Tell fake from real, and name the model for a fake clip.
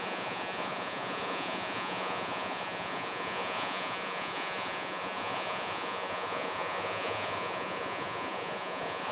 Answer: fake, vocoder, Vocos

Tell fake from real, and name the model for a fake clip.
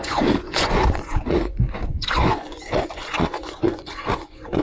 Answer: fake, vocoder, Vocos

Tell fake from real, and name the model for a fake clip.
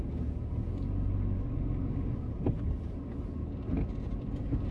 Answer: real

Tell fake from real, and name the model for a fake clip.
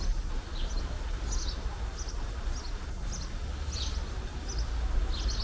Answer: real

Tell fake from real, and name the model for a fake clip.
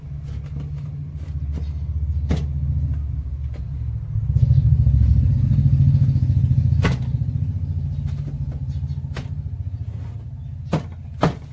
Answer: real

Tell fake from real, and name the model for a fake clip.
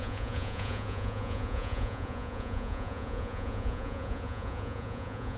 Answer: fake, vocoder, Vocos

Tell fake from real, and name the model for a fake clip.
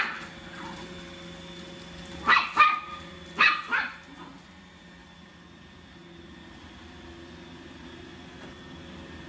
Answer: real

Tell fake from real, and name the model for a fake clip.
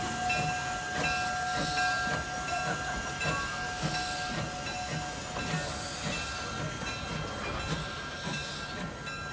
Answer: real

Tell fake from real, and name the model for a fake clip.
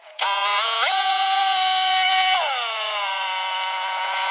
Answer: fake, vocoder, Vocos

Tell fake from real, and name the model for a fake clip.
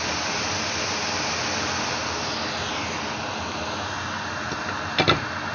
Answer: real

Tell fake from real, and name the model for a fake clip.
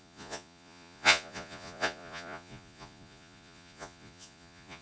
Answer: fake, vocoder, Vocos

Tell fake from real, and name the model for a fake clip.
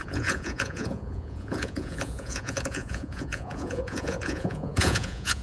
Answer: fake, vocoder, Vocos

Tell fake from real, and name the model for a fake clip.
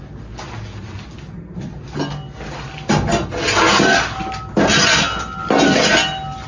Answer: real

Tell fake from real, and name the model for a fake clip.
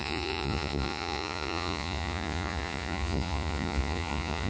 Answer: fake, vocoder, Vocos